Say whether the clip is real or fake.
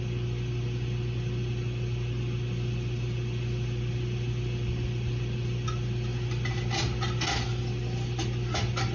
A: real